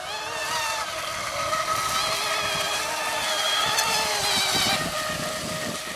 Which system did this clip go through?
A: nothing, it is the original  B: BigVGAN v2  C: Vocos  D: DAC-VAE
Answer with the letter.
A